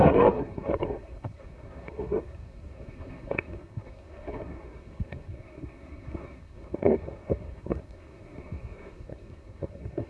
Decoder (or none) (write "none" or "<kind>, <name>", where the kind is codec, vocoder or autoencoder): codec, SNAC